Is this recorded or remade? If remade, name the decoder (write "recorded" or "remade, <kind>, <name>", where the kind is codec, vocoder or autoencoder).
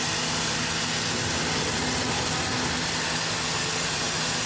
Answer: recorded